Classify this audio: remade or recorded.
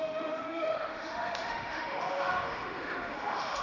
remade